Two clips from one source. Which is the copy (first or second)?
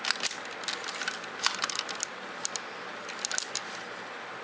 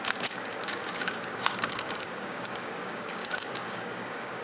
second